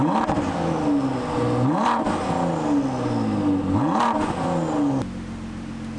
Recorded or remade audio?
recorded